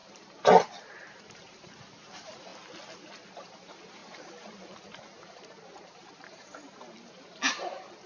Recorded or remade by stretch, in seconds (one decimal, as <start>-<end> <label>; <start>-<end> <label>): 0.0-2.5 remade; 2.5-3.3 recorded; 3.3-8.1 remade